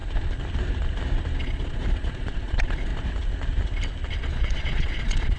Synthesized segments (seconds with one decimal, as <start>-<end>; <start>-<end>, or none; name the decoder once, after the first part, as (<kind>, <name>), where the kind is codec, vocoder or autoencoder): 1.4-2.9 (vocoder, Vocos); 4.2-5.4